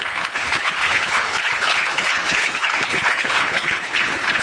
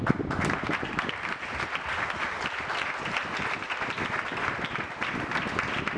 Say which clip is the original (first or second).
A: second